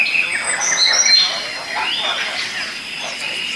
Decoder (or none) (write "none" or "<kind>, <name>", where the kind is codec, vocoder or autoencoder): none